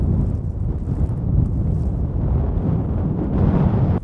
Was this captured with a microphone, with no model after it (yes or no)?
yes